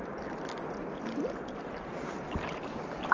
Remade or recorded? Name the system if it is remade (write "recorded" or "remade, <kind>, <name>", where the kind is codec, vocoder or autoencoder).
recorded